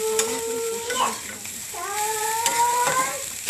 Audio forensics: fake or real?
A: fake